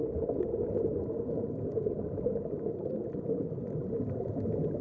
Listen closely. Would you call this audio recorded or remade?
recorded